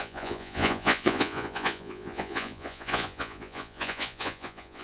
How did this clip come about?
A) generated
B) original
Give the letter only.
A